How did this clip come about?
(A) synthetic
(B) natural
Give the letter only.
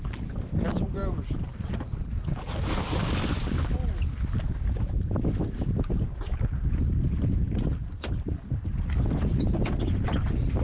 B